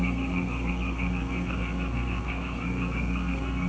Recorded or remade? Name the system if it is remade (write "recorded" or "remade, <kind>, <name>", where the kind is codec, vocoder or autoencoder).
remade, codec, SNAC